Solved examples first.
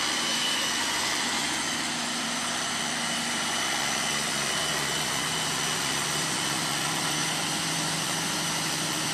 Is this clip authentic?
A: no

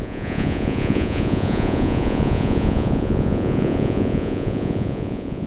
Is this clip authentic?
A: no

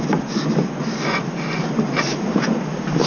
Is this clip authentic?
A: yes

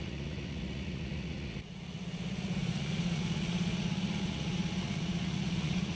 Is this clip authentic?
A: no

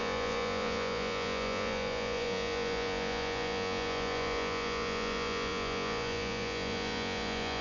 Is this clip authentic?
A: no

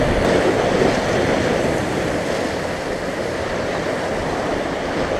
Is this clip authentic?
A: yes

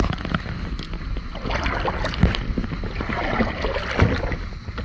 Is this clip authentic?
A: yes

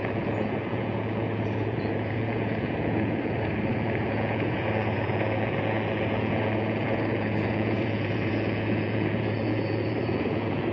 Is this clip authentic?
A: no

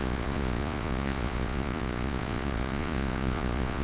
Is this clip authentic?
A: no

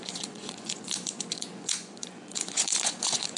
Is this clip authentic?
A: no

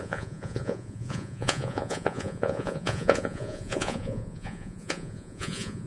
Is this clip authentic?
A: no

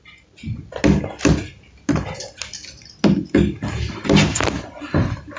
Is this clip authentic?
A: yes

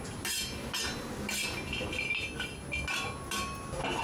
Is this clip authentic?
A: yes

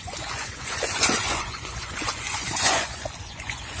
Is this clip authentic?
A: no